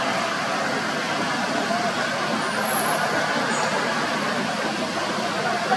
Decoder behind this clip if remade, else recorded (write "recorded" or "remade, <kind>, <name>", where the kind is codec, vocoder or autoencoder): recorded